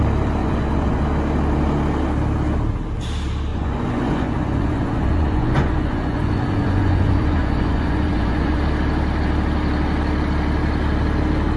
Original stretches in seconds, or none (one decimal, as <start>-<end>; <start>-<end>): 0.0-0.4; 1.0-3.5; 8.6-11.6